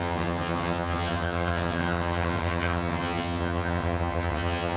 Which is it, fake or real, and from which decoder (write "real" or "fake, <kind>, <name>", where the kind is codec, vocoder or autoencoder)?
fake, vocoder, HiFi-GAN